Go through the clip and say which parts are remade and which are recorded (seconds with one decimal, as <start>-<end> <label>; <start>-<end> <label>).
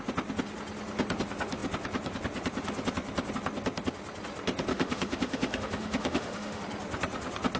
0.0-4.7 recorded; 4.7-6.6 remade; 6.6-7.6 recorded